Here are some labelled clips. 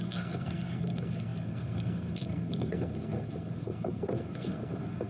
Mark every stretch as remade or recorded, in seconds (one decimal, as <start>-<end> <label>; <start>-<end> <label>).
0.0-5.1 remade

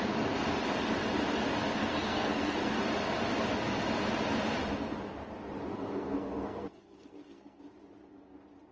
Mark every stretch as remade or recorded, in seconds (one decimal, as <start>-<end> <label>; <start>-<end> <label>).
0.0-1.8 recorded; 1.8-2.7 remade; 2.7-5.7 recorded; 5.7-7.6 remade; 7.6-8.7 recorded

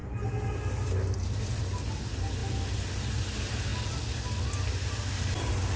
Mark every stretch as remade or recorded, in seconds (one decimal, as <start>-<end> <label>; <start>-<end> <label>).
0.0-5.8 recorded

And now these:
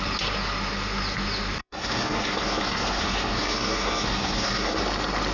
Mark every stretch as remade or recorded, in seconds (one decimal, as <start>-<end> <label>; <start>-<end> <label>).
0.0-1.6 recorded; 1.6-4.8 remade; 4.8-5.3 recorded